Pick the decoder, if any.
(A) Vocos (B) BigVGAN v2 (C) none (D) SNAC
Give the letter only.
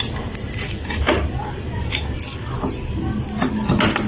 C